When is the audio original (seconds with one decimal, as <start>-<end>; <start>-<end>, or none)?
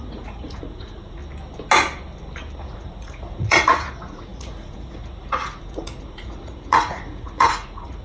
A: 1.2-2.6